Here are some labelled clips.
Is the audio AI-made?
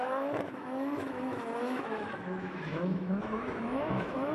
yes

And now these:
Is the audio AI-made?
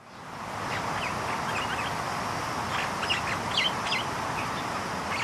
no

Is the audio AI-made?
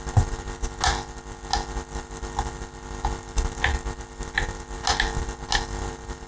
no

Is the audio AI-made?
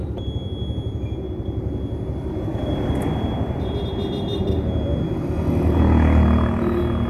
no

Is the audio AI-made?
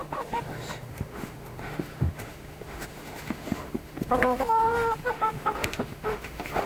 yes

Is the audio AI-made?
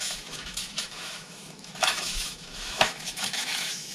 yes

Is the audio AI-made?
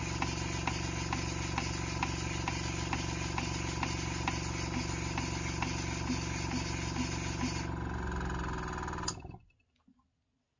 no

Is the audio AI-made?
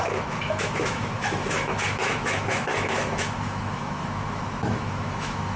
yes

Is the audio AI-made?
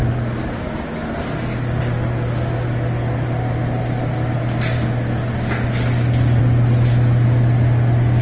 no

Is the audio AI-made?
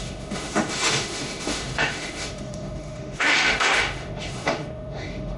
yes